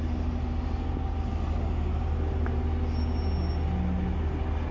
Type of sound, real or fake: real